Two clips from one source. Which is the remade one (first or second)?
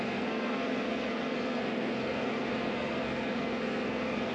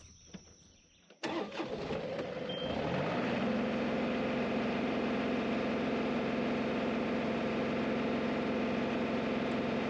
first